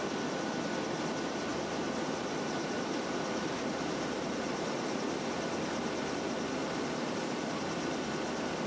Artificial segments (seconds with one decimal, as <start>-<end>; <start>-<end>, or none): 1.5-5.0; 6.6-7.5